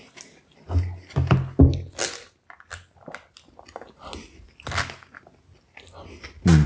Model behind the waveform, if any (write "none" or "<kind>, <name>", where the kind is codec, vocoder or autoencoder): none